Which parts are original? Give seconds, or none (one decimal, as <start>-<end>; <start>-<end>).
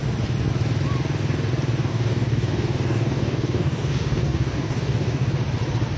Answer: 0.0-1.8; 5.4-6.0